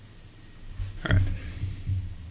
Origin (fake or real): real